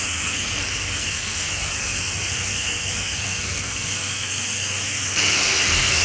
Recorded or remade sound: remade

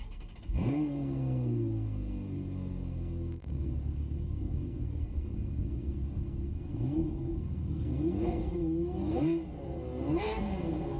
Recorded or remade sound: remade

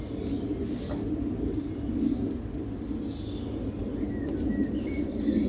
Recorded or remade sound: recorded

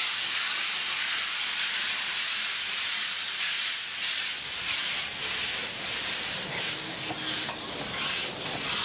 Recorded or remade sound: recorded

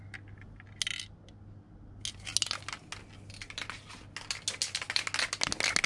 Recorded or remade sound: recorded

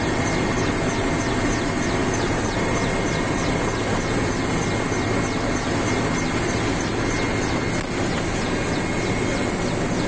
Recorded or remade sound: recorded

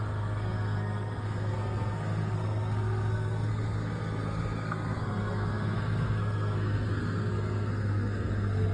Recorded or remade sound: remade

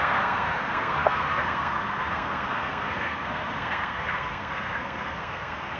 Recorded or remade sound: remade